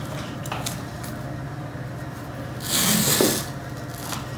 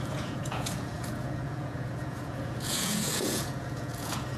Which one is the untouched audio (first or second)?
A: first